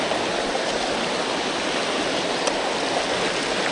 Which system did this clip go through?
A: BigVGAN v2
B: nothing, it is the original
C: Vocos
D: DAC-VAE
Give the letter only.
B